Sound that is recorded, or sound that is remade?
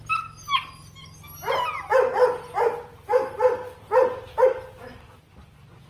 recorded